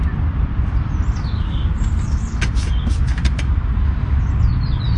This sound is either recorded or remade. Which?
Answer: recorded